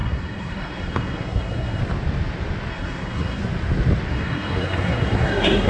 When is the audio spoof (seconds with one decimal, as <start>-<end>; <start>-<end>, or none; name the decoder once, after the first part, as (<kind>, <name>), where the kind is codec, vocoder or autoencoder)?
0.0-1.8 (codec, SNAC); 2.7-3.4; 4.1-5.7